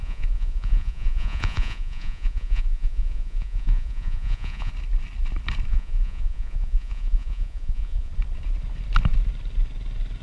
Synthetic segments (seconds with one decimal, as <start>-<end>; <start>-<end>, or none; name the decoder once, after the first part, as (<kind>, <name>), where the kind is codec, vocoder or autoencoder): 0.0-4.7 (vocoder, Vocos); 5.7-8.1